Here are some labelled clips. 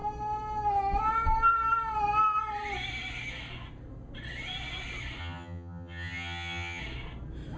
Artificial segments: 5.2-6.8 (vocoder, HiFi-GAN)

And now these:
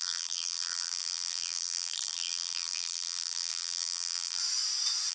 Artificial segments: 0.0-4.4 (vocoder, BigVGAN v2)